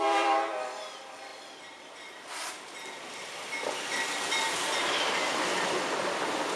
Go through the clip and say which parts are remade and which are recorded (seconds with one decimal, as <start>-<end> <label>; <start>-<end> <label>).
0.0-6.6 remade